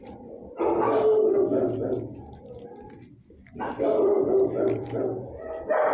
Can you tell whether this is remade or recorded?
recorded